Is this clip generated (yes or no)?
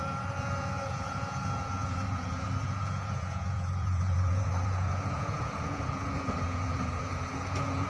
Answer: yes